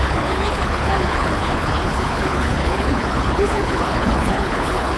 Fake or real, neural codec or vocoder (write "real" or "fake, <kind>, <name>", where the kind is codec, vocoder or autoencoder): fake, codec, HILCodec